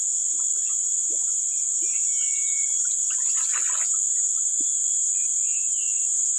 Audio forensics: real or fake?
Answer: real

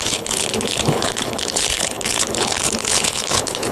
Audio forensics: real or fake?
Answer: fake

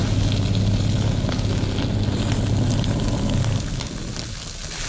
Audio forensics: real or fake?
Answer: real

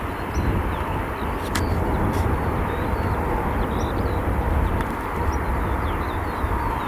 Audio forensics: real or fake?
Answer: real